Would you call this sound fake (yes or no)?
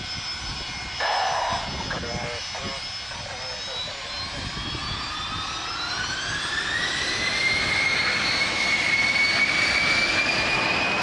no